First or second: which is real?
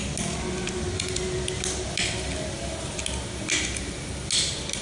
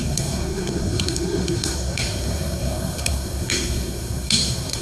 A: first